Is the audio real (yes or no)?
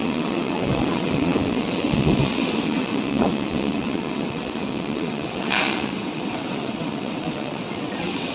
no